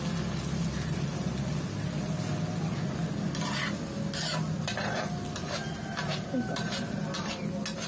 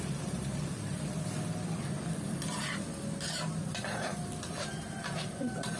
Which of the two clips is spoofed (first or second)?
second